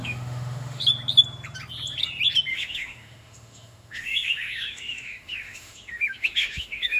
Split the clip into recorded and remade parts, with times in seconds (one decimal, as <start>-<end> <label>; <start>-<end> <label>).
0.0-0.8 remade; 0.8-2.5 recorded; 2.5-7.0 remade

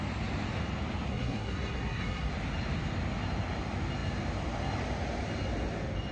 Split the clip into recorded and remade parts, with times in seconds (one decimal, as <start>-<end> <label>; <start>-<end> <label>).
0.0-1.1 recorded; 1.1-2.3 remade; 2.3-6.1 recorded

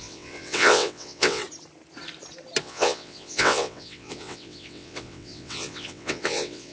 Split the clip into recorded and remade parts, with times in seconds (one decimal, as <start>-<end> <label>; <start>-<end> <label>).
0.0-1.4 remade; 1.4-2.6 recorded; 2.6-6.7 remade

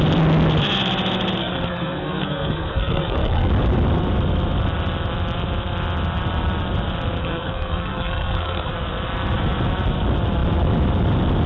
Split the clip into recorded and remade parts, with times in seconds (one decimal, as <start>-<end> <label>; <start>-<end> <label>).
0.0-1.4 recorded; 1.4-3.5 remade; 3.5-7.2 recorded; 7.2-8.7 remade; 8.7-11.5 recorded

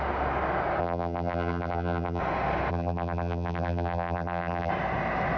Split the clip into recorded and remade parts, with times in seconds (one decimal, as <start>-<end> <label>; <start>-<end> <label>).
0.0-0.8 recorded; 0.8-2.2 remade; 2.2-2.7 recorded; 2.7-4.7 remade; 4.7-5.4 recorded

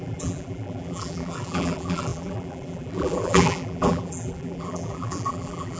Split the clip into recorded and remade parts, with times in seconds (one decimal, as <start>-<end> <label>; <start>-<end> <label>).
0.0-5.8 remade

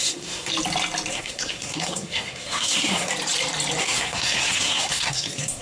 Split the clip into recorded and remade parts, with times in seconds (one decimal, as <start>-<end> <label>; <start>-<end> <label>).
0.0-0.5 remade; 0.5-1.1 recorded; 1.1-3.1 remade; 3.1-3.8 recorded; 3.8-5.6 remade